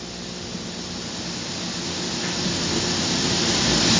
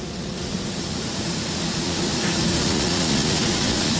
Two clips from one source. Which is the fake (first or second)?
second